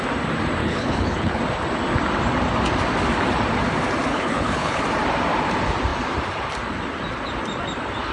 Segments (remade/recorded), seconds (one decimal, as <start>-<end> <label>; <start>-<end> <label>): 0.0-0.6 recorded; 0.6-1.4 remade; 1.4-4.1 recorded; 4.1-4.8 remade; 4.8-8.1 recorded